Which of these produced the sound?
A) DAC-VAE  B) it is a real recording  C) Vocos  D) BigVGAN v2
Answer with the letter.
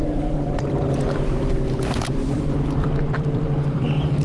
D